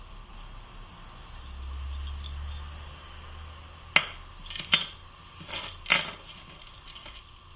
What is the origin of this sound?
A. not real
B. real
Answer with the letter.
B